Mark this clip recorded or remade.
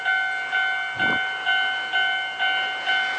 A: recorded